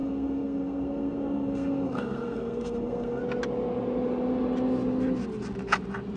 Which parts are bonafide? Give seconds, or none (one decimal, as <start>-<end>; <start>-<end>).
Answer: 3.2-6.2